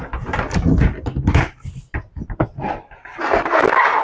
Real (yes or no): yes